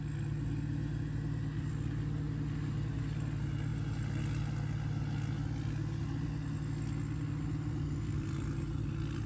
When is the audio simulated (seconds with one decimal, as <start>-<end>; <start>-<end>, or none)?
3.7-4.2